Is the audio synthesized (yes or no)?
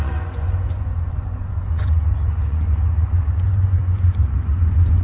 yes